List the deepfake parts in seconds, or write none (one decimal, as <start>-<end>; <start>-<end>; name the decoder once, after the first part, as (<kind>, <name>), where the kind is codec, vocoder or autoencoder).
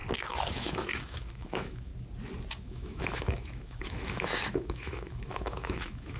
0.5-1.9 (autoencoder, DAC-VAE); 2.6-6.2